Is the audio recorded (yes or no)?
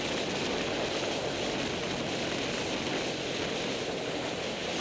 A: yes